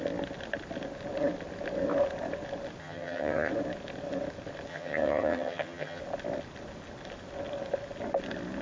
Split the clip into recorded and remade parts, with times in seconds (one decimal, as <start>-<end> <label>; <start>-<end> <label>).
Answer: 0.0-2.8 recorded; 2.8-3.5 remade; 3.5-4.7 recorded; 4.7-6.0 remade; 6.0-8.6 recorded